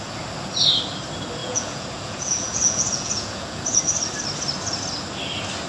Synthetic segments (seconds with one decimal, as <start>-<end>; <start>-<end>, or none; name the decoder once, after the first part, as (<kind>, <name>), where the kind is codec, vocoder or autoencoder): 1.4-3.8 (vocoder, Vocos)